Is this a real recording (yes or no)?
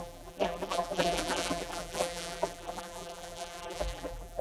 no